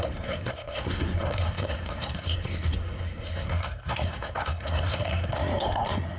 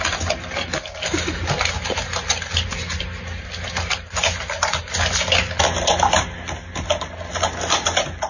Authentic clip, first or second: second